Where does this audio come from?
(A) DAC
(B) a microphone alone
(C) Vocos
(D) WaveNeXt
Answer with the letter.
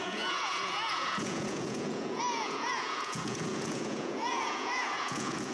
C